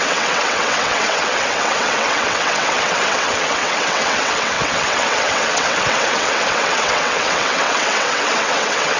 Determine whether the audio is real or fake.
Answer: fake